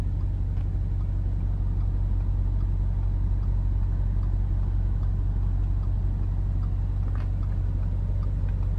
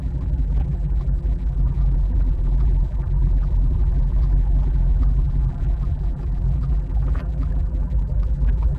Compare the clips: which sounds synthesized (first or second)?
second